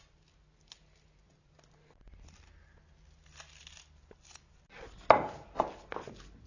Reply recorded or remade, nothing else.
recorded